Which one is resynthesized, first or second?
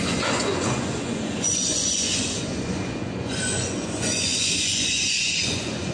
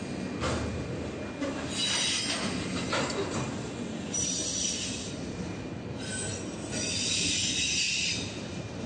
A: first